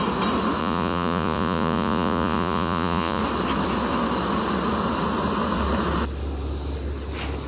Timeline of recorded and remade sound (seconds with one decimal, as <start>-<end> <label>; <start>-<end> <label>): 0.0-0.6 recorded; 0.6-3.2 remade; 3.2-7.5 recorded